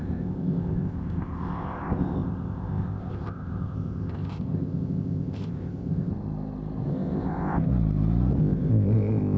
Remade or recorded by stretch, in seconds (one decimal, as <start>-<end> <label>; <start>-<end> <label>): 0.0-6.1 remade; 6.1-6.9 recorded; 6.9-7.7 remade; 7.7-8.4 recorded; 8.4-9.4 remade